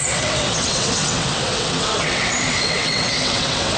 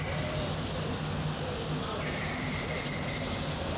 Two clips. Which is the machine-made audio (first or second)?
first